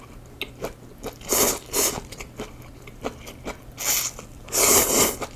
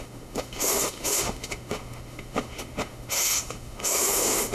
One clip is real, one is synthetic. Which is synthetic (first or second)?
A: second